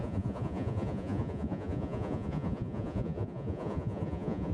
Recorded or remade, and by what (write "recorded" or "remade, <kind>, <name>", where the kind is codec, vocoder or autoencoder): remade, vocoder, Vocos